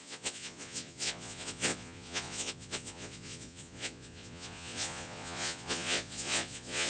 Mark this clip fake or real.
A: fake